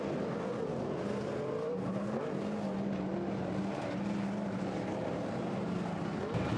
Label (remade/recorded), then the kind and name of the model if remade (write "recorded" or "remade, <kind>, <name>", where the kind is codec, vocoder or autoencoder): recorded